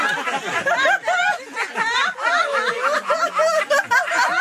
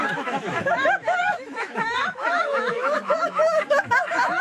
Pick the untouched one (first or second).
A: first